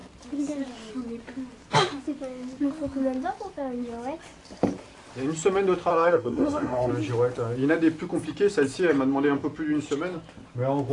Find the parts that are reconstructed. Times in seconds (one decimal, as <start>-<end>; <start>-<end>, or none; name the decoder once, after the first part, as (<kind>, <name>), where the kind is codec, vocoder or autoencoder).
5.9-6.9 (codec, SNAC)